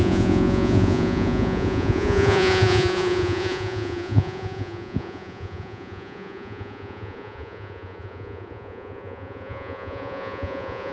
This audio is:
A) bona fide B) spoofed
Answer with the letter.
B